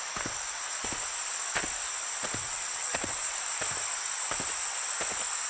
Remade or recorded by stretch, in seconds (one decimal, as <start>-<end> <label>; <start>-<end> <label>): 0.0-2.4 recorded; 2.4-3.3 remade; 3.3-5.5 recorded